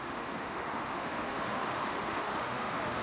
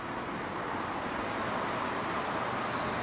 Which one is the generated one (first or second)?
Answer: first